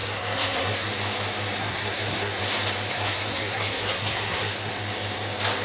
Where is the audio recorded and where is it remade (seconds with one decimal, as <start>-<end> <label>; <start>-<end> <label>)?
0.0-0.9 remade; 0.9-1.6 recorded; 1.6-2.4 remade; 2.4-2.9 recorded; 2.9-4.7 remade; 4.7-5.6 recorded